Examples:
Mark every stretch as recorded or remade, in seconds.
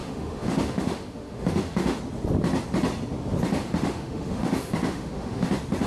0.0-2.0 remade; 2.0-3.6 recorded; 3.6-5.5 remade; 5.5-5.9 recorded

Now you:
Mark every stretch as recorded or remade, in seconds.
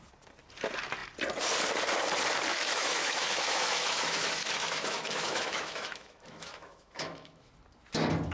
0.0-2.5 recorded; 2.5-7.5 remade; 7.5-8.3 recorded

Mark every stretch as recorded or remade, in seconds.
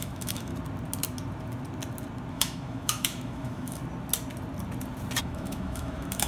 0.0-0.5 remade; 0.5-2.3 recorded; 2.3-3.8 remade; 3.8-5.2 recorded; 5.2-6.3 remade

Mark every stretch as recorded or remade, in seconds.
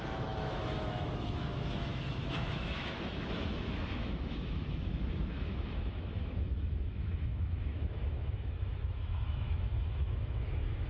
0.0-10.9 remade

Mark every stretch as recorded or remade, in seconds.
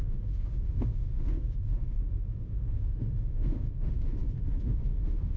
0.0-5.4 remade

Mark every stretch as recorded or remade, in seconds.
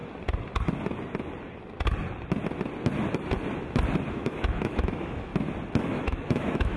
0.0-4.1 recorded; 4.1-5.3 remade; 5.3-5.8 recorded; 5.8-6.8 remade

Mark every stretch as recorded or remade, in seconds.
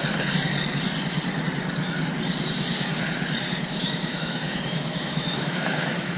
0.0-3.8 recorded; 3.8-6.2 remade